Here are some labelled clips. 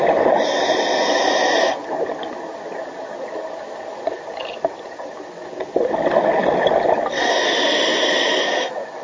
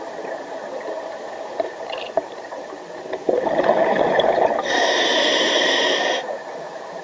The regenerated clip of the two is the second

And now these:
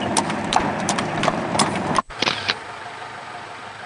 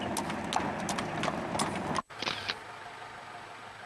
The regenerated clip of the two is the first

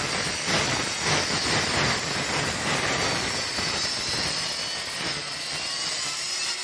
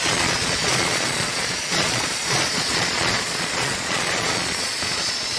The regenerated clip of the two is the second